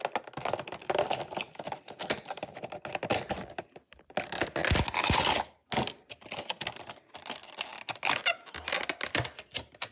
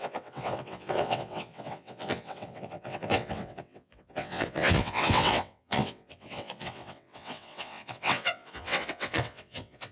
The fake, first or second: second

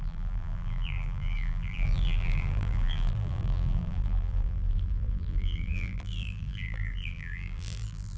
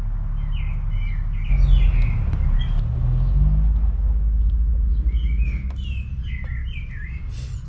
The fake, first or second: first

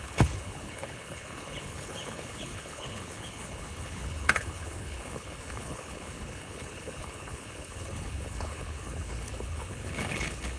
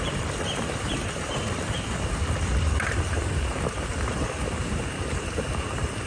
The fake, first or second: first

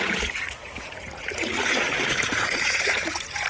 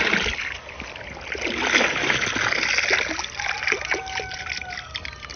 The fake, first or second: first